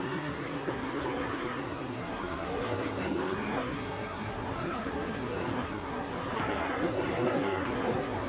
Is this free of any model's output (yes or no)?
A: no